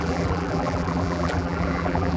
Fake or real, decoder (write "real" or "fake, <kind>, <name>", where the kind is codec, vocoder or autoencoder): fake, vocoder, BigVGAN v2